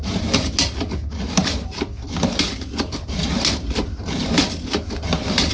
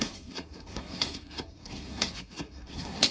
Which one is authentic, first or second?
first